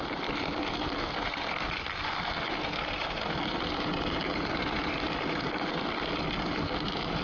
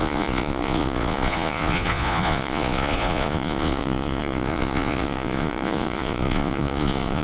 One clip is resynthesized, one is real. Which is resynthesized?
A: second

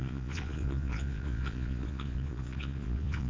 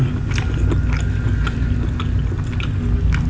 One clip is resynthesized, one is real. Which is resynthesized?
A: first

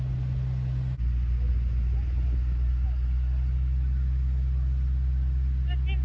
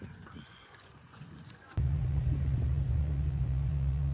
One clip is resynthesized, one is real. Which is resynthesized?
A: second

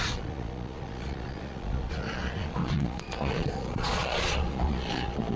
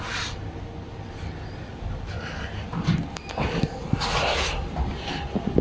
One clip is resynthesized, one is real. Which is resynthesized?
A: first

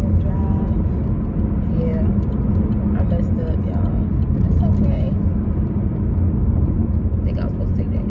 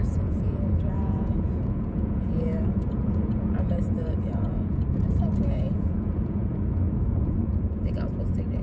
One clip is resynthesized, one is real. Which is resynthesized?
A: second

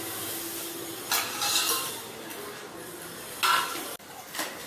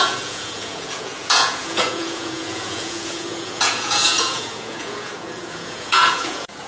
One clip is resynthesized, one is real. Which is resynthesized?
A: second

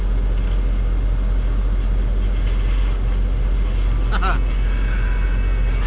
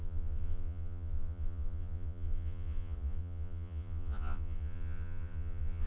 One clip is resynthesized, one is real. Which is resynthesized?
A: second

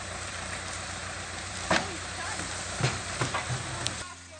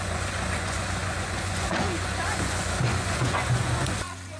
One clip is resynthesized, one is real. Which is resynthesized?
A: second